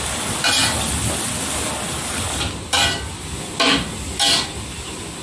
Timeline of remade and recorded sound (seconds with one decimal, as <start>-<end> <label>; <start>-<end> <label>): 0.0-5.2 recorded